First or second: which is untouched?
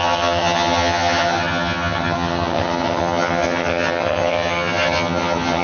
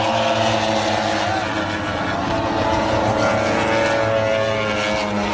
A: second